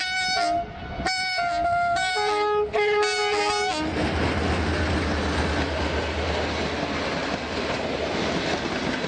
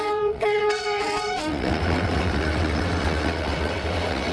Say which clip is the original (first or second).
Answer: first